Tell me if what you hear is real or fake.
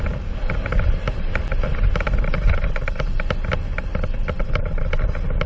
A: real